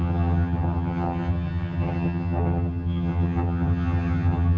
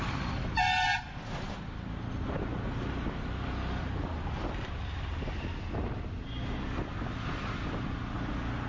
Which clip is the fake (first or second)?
first